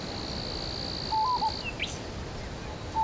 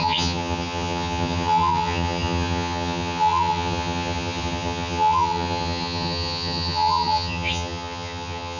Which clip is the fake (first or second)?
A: second